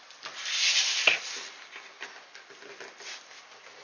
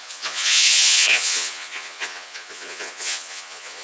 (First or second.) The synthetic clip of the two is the second